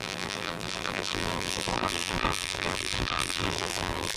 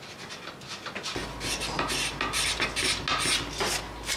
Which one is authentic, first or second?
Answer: second